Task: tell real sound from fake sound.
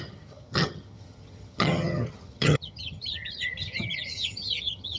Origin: fake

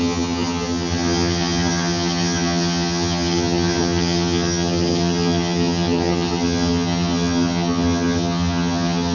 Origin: fake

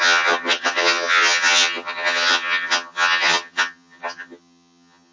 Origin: fake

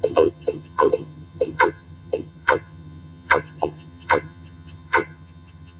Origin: fake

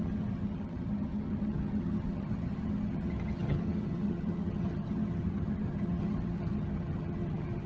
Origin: fake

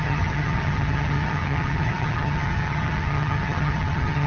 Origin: fake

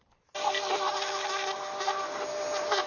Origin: real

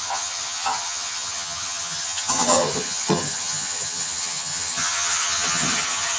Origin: fake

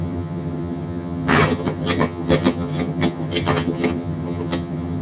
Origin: fake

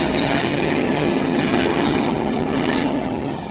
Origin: fake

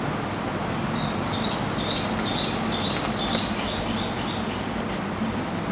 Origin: real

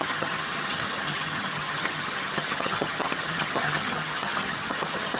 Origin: fake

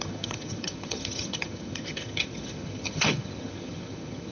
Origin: fake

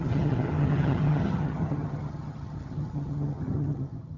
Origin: fake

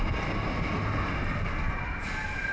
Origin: real